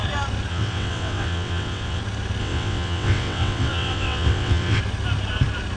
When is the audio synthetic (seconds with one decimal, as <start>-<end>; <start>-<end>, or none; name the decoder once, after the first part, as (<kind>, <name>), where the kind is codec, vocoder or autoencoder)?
0.5-2.0 (vocoder, WaveNeXt); 2.4-4.8